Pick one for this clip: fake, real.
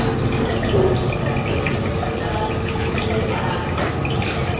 real